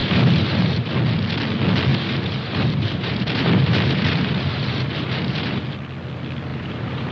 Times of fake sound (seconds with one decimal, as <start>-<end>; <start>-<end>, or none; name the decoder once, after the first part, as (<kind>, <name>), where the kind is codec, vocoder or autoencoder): 0.0-0.9 (vocoder, BigVGAN v2); 1.9-5.6; 6.5-7.1